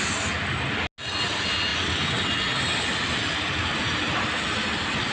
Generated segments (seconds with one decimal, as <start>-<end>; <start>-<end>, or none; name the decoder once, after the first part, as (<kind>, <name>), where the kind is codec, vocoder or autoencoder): none